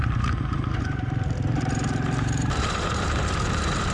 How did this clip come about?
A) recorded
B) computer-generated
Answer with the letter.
B